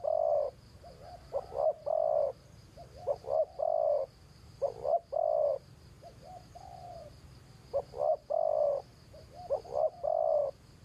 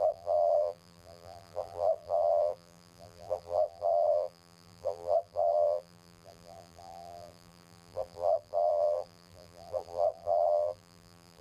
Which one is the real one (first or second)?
first